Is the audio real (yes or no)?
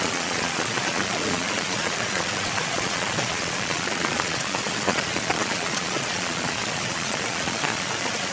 no